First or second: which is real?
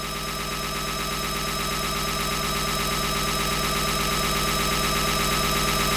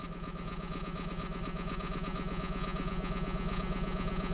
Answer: first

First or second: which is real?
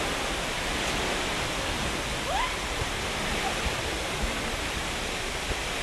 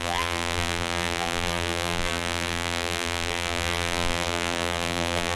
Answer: first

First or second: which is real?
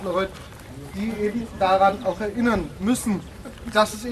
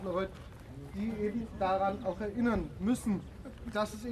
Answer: second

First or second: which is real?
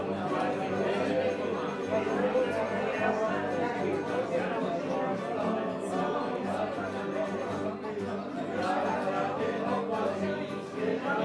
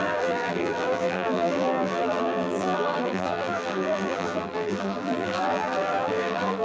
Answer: first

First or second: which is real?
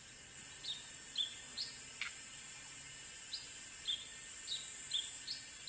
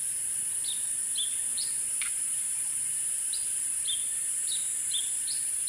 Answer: first